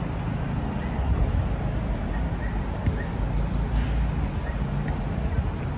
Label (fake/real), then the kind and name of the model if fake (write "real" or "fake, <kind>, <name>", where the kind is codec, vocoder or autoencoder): real